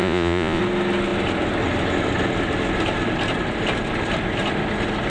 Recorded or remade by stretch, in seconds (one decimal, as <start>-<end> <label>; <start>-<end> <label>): 0.0-0.6 remade; 0.6-5.1 recorded